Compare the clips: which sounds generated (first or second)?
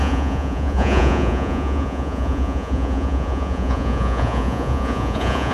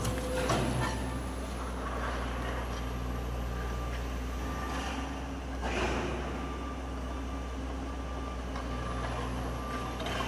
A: first